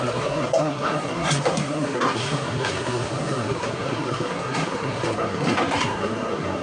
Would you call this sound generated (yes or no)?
yes